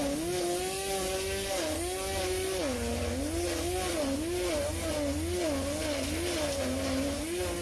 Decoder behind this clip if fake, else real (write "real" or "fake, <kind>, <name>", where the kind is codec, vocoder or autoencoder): real